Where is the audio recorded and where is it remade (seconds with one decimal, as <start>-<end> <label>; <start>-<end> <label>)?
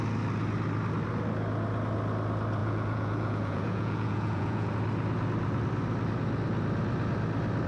0.0-2.6 recorded; 2.6-4.7 remade; 4.7-7.7 recorded